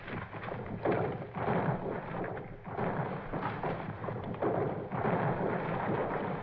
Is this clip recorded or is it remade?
recorded